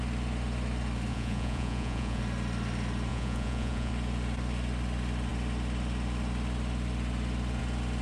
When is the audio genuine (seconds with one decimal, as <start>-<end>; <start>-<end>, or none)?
0.0-1.1; 2.2-3.1; 3.9-8.0

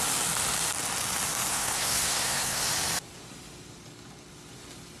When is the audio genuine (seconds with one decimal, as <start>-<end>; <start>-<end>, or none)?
0.0-1.5; 2.6-5.0